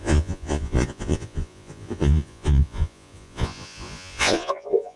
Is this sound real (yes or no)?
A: no